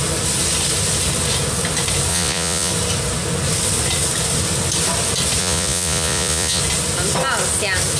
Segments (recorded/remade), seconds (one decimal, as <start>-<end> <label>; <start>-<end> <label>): 0.0-2.1 recorded; 2.1-2.7 remade; 2.7-5.4 recorded; 5.4-6.6 remade; 6.6-8.0 recorded